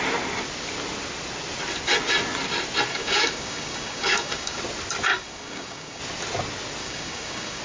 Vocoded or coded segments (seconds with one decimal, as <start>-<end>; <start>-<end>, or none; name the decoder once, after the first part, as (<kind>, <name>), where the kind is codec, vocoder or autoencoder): 2.9-4.6 (codec, DAC); 5.1-6.0; 6.8-7.6